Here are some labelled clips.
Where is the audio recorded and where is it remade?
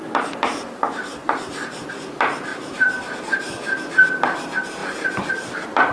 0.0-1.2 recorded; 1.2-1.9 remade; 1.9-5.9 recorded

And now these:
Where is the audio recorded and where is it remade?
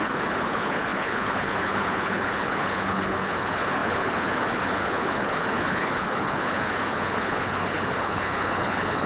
0.0-9.1 remade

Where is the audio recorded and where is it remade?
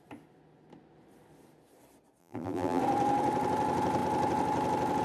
0.0-2.2 recorded; 2.2-2.8 remade; 2.8-5.0 recorded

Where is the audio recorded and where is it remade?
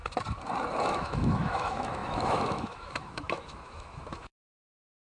0.0-0.8 recorded; 0.8-5.0 remade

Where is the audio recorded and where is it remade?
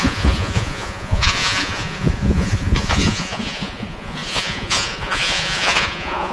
0.0-6.3 remade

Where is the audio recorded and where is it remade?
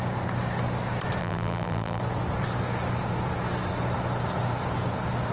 0.0-1.2 recorded; 1.2-2.0 remade; 2.0-5.3 recorded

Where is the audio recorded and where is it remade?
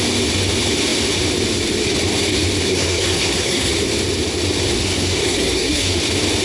0.0-2.6 recorded; 2.6-3.7 remade; 3.7-4.8 recorded; 4.8-6.0 remade; 6.0-6.4 recorded